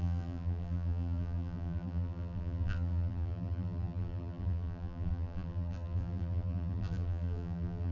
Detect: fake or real fake